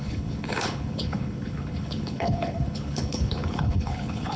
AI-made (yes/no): yes